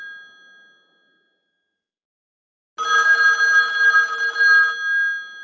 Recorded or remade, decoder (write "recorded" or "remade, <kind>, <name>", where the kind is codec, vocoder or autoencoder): recorded